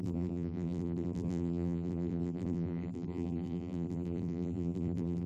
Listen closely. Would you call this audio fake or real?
fake